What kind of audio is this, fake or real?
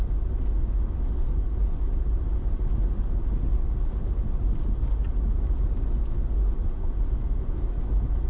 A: real